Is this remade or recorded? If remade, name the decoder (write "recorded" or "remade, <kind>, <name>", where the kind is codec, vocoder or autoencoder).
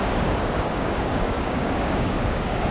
remade, codec, DAC